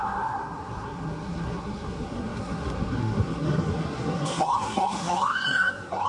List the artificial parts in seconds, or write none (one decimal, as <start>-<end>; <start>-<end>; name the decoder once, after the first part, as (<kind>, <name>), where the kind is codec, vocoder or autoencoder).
0.0-6.1 (codec, SNAC)